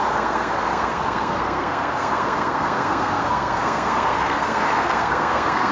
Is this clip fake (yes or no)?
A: yes